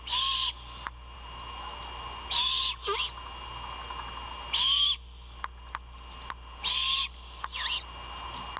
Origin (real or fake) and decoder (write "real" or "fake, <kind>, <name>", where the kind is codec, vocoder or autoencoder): real